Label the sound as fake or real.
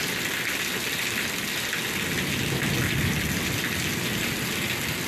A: real